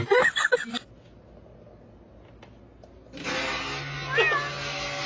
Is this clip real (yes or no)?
yes